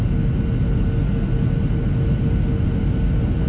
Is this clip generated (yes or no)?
no